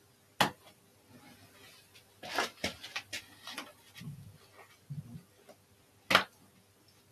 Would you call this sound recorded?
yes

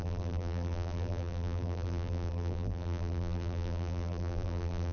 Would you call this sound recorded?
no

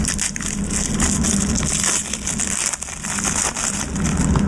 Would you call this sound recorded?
yes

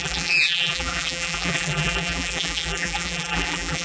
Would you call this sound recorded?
no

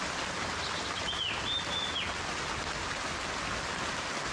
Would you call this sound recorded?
yes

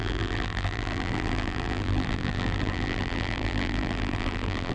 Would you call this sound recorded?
no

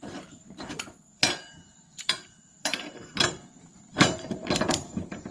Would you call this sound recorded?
no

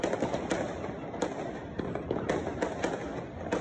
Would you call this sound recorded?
yes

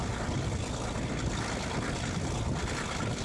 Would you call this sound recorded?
yes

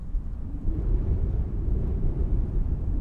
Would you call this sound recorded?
yes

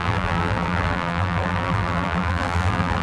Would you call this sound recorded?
no